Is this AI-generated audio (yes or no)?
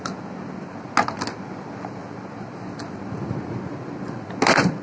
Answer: no